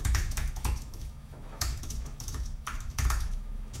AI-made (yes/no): yes